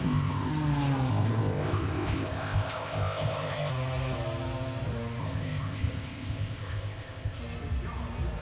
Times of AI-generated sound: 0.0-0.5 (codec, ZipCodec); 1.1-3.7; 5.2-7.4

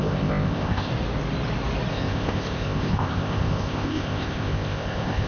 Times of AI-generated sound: 0.0-0.9 (codec, ZipCodec); 1.9-5.3

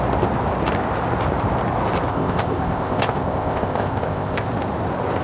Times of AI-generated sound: 2.1-4.5 (codec, ZipCodec)

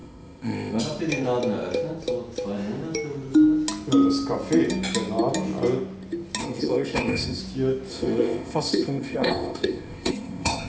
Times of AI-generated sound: 0.0-0.8 (codec, ZipCodec); 6.4-7.4; 7.9-10.7

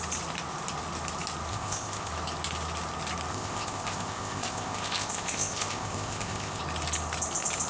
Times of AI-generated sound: 1.5-2.1 (codec, ZipCodec); 3.3-6.6